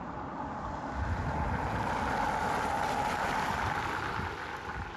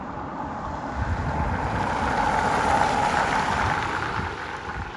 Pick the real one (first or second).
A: first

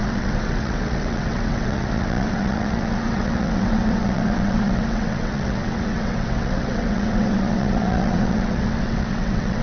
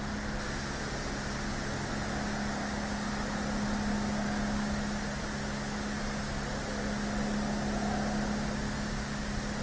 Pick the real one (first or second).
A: second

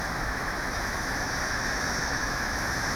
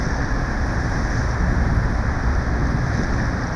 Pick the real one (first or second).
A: second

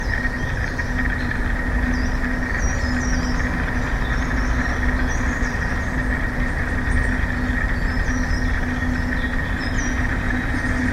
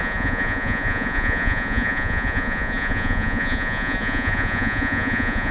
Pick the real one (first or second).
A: first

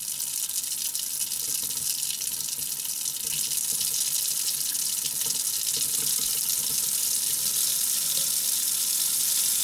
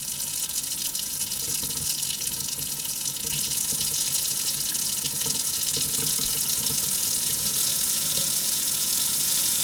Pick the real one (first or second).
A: first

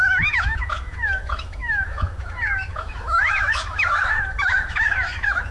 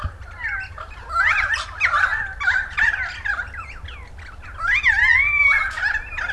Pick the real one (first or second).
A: second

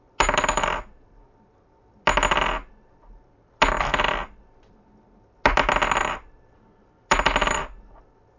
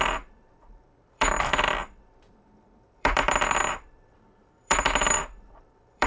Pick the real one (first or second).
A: first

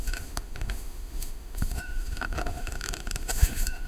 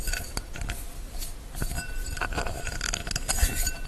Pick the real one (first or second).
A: second